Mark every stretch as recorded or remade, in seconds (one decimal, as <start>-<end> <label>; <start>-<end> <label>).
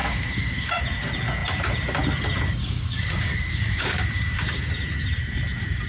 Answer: 0.0-0.7 remade; 0.7-2.6 recorded; 2.6-4.6 remade; 4.6-5.9 recorded